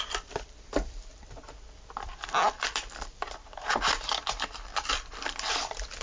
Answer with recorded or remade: remade